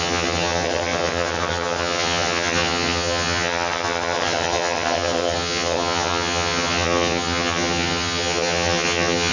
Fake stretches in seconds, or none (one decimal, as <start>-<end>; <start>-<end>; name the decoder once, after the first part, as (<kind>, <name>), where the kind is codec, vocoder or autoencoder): 0.0-9.3 (vocoder, HiFi-GAN)